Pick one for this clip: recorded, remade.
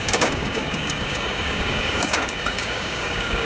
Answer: remade